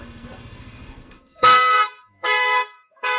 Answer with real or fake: fake